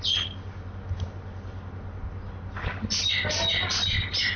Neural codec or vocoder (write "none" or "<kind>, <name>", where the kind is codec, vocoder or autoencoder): none